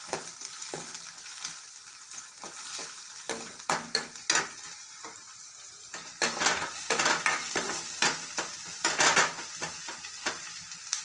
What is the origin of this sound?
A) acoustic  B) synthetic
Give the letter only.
A